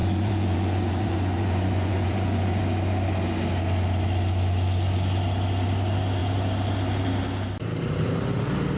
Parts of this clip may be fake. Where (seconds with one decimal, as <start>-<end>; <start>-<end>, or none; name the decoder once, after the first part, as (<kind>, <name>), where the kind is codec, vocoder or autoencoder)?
0.0-2.6 (vocoder, Vocos)